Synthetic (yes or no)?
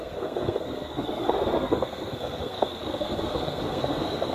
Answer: yes